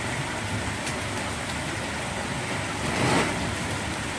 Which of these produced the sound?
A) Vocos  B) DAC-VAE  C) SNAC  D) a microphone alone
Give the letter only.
D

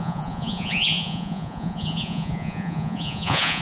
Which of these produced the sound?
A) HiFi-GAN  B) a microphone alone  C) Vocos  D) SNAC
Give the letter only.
C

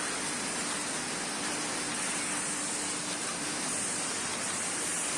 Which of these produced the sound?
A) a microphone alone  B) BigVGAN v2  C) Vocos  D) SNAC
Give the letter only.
A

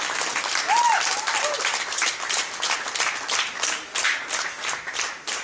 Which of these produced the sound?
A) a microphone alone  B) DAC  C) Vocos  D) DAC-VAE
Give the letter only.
A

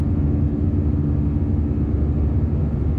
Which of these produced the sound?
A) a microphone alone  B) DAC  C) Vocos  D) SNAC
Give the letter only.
A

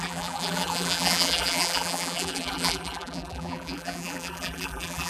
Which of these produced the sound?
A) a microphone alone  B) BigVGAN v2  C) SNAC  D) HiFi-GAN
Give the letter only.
B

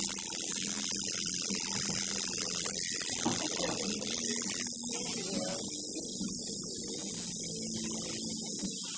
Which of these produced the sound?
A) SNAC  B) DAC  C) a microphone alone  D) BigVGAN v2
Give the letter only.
C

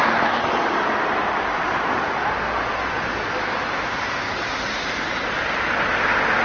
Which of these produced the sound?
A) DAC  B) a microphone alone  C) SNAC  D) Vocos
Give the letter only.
B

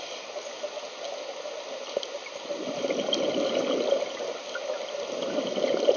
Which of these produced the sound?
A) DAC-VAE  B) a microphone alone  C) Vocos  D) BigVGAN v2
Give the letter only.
B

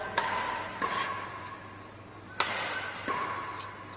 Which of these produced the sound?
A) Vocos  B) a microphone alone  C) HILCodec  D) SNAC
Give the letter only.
B